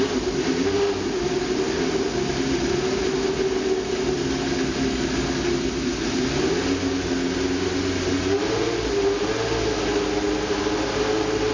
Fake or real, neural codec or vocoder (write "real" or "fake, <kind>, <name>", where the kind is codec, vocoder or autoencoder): real